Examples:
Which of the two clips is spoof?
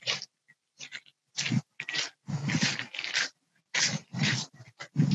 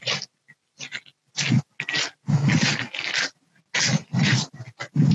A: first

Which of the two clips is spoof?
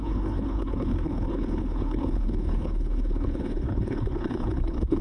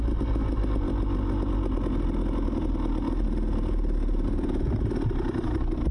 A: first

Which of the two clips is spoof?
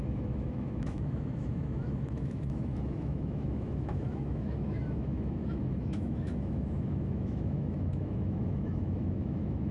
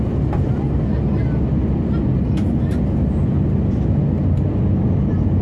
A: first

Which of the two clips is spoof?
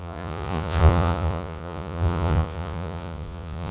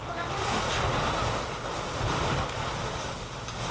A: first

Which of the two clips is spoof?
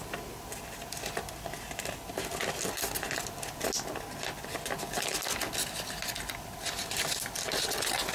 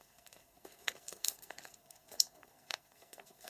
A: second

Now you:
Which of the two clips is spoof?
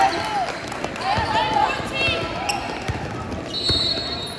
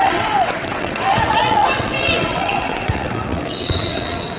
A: second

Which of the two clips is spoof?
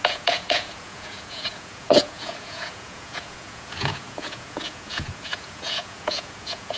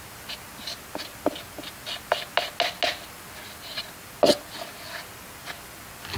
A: first